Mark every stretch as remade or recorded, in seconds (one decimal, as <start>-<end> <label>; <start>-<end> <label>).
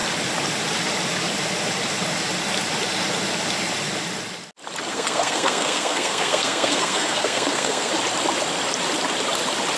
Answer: 0.0-4.9 recorded; 4.9-7.9 remade; 7.9-9.8 recorded